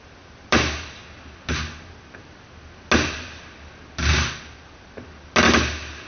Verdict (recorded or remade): recorded